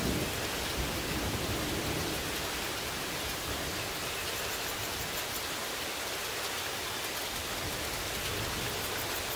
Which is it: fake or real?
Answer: real